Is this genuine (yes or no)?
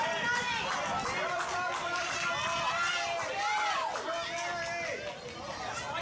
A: yes